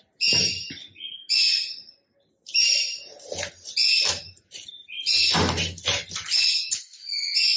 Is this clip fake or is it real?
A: real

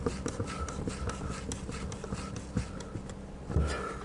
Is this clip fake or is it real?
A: real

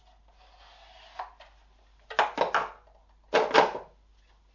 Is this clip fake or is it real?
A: real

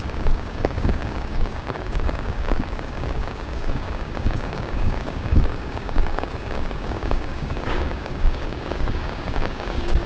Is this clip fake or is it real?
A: fake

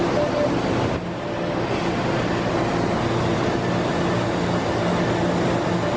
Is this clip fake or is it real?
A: real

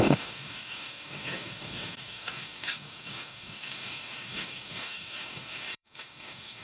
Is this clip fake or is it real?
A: fake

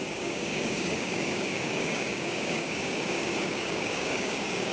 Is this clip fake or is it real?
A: fake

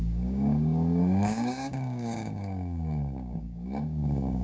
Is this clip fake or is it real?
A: fake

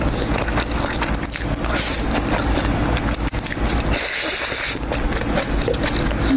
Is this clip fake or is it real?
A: real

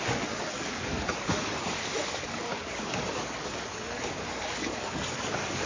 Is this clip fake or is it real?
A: fake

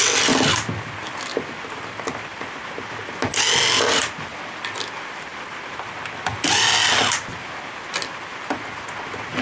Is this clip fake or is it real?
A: real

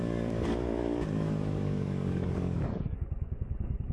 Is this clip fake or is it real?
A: fake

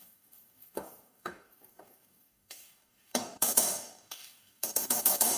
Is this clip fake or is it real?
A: fake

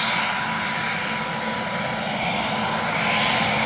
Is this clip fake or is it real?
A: real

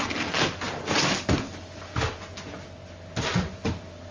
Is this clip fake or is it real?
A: real